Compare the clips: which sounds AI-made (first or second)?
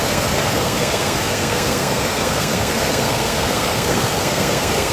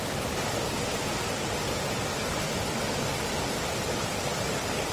first